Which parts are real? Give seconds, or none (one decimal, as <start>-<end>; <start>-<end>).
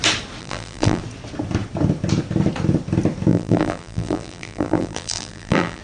0.0-0.4; 1.0-3.3